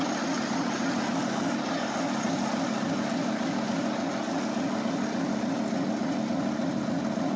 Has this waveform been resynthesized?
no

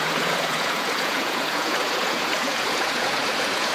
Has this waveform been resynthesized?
yes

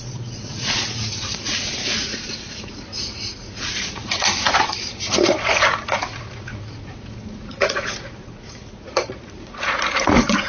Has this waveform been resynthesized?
yes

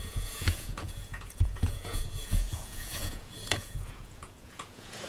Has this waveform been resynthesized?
yes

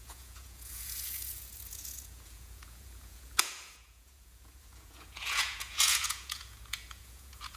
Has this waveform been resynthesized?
yes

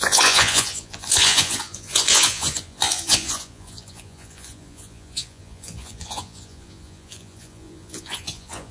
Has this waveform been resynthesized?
yes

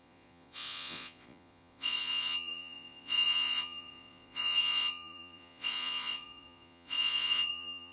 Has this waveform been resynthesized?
yes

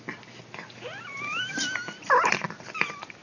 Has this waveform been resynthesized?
no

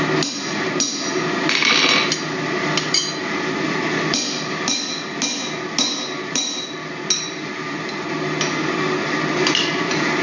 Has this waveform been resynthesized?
no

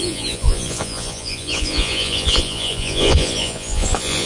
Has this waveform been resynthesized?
yes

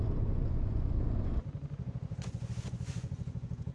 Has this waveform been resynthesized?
yes